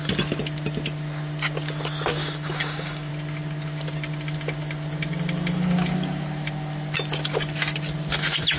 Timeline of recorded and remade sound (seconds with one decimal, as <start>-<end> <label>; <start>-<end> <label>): 0.0-2.1 recorded; 2.1-3.1 remade; 3.1-8.6 recorded